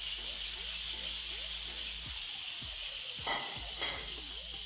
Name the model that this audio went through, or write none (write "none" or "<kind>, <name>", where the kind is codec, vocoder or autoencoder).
none